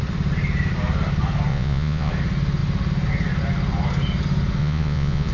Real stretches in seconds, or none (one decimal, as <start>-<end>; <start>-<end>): 0.0-1.5; 2.1-4.6